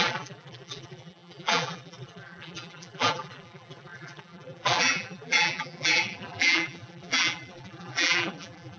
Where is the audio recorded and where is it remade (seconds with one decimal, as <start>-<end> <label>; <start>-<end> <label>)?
0.0-8.8 remade